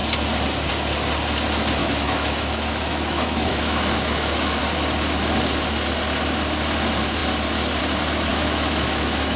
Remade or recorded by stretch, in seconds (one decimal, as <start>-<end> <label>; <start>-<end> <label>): 0.0-1.8 recorded; 1.8-4.6 remade; 4.6-8.3 recorded; 8.3-9.4 remade